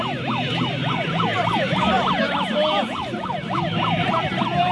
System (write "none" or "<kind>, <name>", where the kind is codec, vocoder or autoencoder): none